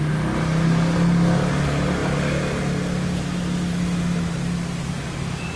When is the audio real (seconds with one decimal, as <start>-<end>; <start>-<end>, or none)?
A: 0.0-5.6